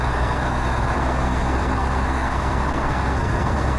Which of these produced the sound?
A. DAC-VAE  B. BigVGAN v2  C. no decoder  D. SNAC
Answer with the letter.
D